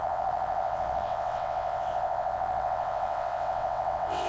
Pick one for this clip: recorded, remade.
remade